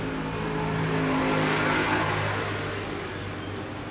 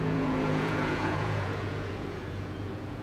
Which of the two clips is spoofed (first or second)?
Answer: second